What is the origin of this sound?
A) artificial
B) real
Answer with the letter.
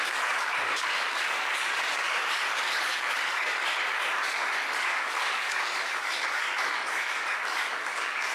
A